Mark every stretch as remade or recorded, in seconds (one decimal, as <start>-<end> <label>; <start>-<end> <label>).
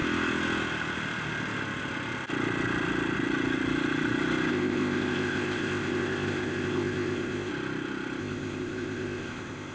0.0-4.5 recorded; 4.5-7.5 remade; 7.5-8.2 recorded; 8.2-9.7 remade